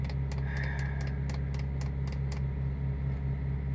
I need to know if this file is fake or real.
real